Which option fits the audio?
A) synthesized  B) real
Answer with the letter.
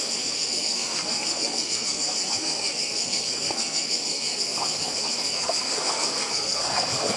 A